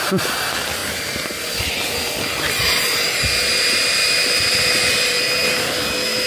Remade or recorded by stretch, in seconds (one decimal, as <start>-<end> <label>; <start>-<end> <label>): 0.0-0.8 recorded; 0.8-1.5 remade; 1.5-4.0 recorded; 4.0-5.2 remade; 5.2-6.3 recorded